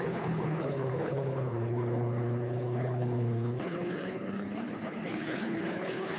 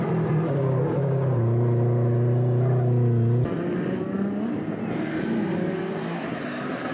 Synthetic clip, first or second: first